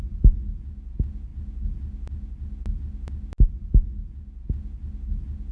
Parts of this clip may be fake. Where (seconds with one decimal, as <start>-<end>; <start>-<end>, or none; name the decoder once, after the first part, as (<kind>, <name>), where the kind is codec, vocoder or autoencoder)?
none